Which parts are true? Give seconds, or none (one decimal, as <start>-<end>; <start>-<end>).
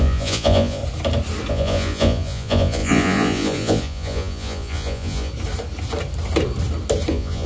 0.8-1.5; 5.3-7.1